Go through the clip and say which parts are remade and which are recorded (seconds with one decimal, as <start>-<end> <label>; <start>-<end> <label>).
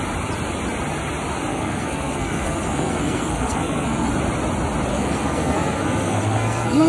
0.0-1.5 recorded; 1.5-4.1 remade; 4.1-4.9 recorded; 4.9-6.9 remade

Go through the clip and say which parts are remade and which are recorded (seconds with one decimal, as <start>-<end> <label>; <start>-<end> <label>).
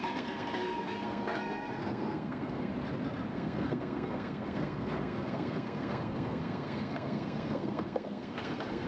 0.0-2.7 remade; 2.7-3.3 recorded; 3.3-8.9 remade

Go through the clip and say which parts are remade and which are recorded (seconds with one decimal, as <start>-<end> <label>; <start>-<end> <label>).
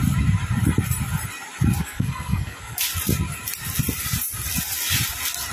0.0-1.8 recorded; 1.8-2.8 remade; 2.8-5.5 recorded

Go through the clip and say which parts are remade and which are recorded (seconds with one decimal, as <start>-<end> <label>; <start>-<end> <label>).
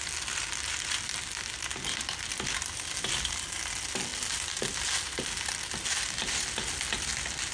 0.0-7.5 recorded